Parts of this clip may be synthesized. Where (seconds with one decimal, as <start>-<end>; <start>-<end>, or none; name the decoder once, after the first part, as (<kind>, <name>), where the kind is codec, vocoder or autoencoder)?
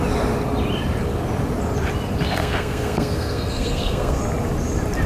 2.4-4.2 (codec, SNAC)